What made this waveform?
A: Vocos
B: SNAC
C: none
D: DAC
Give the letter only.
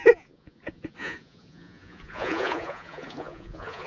A